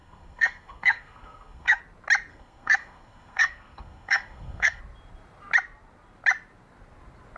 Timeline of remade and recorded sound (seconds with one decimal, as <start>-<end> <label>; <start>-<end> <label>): 0.0-1.8 remade; 1.8-2.3 recorded; 2.3-4.8 remade; 4.8-7.4 recorded